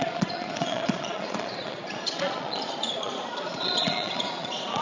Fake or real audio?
fake